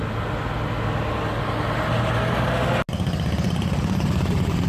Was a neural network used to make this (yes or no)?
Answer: no